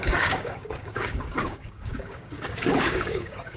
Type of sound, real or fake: fake